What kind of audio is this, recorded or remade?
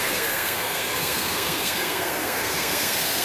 remade